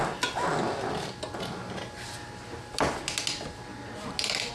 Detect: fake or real real